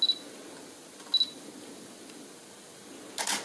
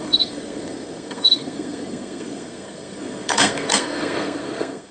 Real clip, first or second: first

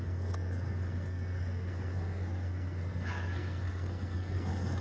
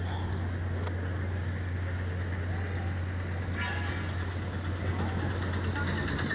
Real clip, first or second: second